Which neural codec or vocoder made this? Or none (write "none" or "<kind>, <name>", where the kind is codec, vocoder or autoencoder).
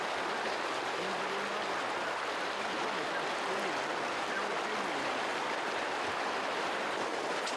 none